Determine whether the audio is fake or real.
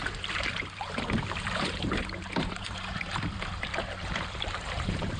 fake